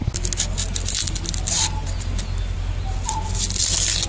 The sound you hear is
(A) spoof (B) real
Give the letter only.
B